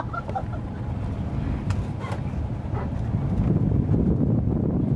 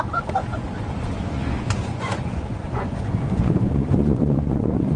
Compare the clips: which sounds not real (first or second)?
second